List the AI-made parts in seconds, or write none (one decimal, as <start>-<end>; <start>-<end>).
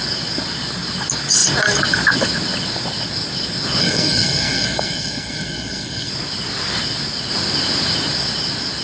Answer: 3.8-6.1